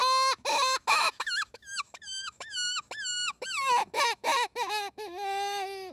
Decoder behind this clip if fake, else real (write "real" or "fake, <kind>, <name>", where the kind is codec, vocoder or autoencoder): fake, autoencoder, DAC-VAE